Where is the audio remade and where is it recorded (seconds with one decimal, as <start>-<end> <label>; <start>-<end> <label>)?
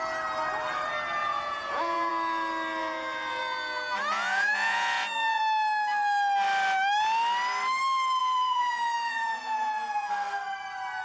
0.0-1.2 recorded; 1.2-2.1 remade; 2.1-2.8 recorded; 2.8-3.4 remade; 3.4-4.0 recorded; 4.0-5.4 remade; 5.4-8.2 recorded; 8.2-10.1 remade; 10.1-11.0 recorded